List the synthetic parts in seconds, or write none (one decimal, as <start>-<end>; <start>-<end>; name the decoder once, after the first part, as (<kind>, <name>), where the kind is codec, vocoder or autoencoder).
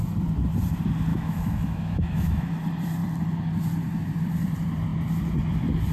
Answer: 1.1-2.5 (autoencoder, DAC-VAE)